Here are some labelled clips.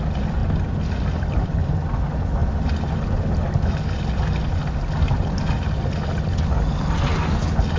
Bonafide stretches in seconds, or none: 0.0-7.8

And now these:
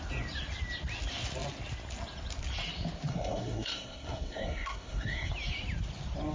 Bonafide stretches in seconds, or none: 0.0-3.1; 5.3-6.3

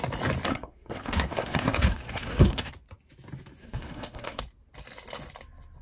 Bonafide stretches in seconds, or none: 0.0-0.5; 2.7-3.6; 4.4-5.8